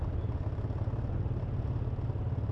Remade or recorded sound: recorded